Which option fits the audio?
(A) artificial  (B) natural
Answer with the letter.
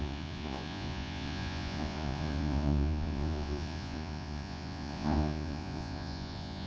A